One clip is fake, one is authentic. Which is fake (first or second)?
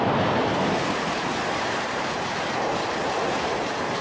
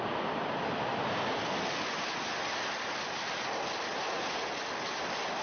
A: first